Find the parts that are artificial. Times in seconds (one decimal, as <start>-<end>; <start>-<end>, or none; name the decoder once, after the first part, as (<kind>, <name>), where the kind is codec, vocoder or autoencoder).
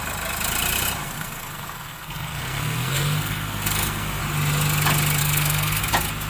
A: 1.0-4.2 (codec, SNAC); 5.2-5.8